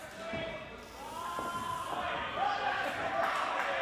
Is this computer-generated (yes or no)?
no